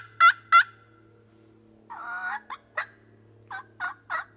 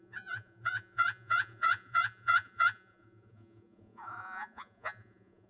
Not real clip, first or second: second